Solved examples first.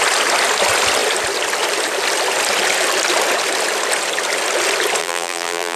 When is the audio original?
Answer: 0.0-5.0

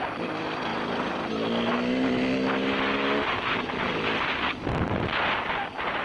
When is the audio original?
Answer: 0.0-6.0